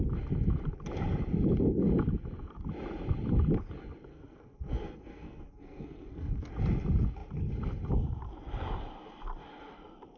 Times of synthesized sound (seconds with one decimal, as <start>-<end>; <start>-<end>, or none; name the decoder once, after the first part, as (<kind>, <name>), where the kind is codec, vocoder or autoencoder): 4.1-6.5 (codec, SNAC)